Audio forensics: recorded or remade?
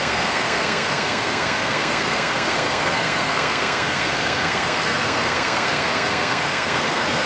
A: remade